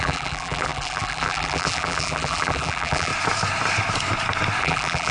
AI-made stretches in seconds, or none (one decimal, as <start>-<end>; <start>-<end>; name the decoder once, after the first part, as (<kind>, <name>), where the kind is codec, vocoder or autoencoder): 0.0-3.1 (vocoder, BigVGAN v2); 4.6-5.1